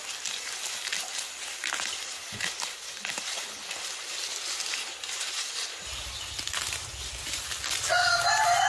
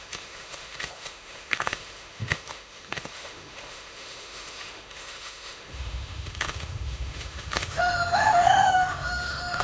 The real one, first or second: first